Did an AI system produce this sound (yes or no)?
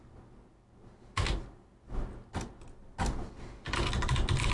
no